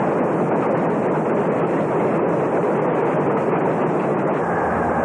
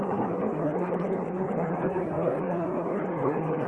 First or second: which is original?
first